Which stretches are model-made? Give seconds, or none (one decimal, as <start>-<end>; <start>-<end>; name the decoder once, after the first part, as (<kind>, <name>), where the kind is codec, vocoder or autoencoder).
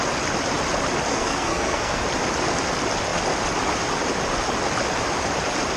1.1-2.0 (codec, SNAC)